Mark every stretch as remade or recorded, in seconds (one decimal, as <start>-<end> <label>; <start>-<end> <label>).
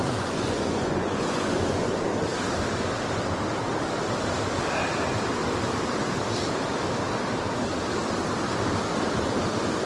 0.0-1.9 remade; 1.9-9.9 recorded